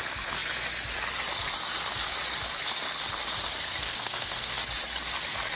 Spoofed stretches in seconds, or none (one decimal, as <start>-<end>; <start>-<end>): 3.8-4.6